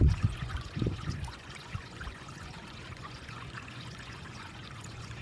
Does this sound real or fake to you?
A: fake